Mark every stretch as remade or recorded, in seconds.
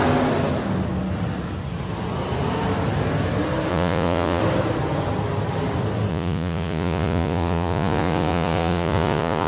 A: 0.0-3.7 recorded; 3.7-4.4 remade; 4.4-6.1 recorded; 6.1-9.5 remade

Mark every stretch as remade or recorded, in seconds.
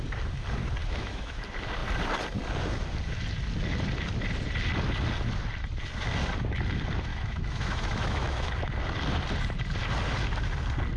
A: 0.0-0.8 recorded; 0.8-1.4 remade; 1.4-7.1 recorded; 7.1-8.5 remade; 8.5-11.0 recorded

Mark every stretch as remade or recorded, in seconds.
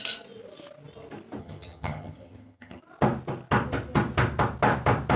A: 0.0-1.4 recorded; 1.4-2.8 remade; 2.8-5.2 recorded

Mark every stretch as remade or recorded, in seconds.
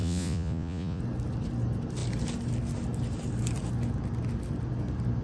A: 0.0-1.0 remade; 1.0-5.2 recorded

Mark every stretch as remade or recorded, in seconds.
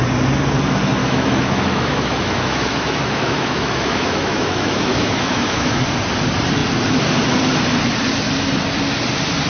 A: 0.0-1.0 recorded; 1.0-5.8 remade; 5.8-9.5 recorded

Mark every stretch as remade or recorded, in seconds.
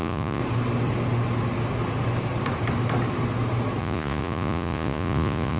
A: 0.0-0.4 remade; 0.4-3.8 recorded; 3.8-5.6 remade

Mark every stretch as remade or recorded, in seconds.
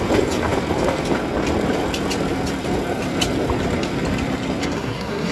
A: 0.0-4.6 recorded; 4.6-5.3 remade